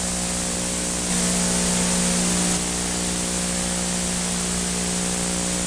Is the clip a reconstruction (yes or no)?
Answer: no